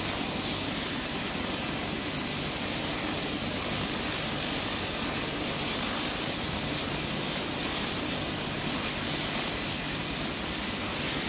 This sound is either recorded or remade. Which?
recorded